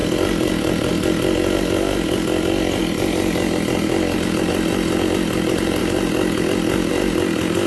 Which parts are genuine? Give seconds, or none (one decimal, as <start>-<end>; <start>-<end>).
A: 0.0-7.7